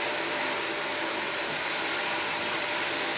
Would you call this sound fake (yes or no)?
no